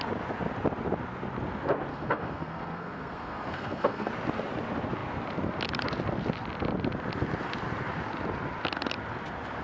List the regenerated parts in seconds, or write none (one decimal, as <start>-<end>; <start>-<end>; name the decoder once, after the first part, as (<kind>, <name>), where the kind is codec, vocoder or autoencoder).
1.9-4.1 (codec, SNAC)